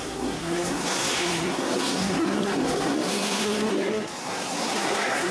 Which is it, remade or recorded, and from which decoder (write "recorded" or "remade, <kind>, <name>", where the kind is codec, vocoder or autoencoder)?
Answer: remade, codec, SNAC